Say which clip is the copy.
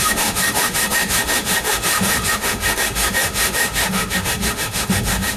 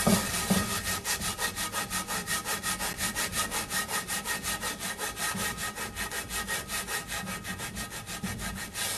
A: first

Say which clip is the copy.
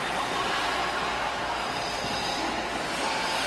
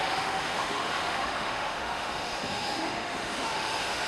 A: second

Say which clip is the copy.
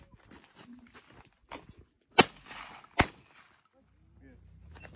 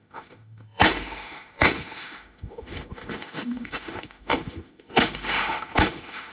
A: second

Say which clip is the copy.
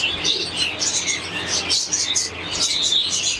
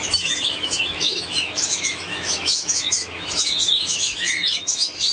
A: second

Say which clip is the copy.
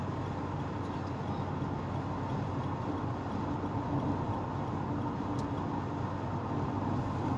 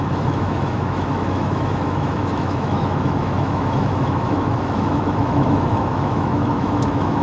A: second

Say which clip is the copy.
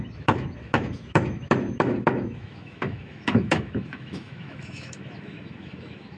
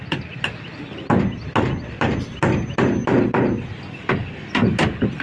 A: first